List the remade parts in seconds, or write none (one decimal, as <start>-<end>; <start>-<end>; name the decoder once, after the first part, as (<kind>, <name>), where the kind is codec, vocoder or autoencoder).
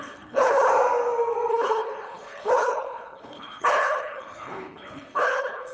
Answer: 0.0-0.7 (codec, HILCodec); 1.5-5.7